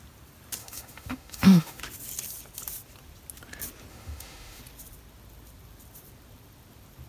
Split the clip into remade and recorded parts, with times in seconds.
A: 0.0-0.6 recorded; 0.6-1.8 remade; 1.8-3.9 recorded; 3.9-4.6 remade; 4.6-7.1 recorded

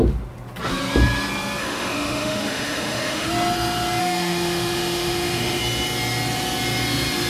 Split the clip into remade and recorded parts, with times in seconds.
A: 0.0-1.6 recorded; 1.6-3.3 remade; 3.3-4.0 recorded; 4.0-5.6 remade; 5.6-7.3 recorded

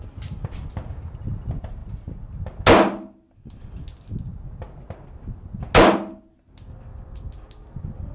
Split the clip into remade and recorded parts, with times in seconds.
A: 0.0-8.1 recorded